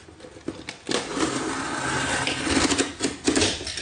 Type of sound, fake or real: real